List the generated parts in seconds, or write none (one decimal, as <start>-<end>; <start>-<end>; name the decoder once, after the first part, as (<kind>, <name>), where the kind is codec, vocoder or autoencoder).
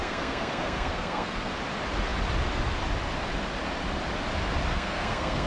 0.0-1.5 (codec, SNAC); 4.7-5.5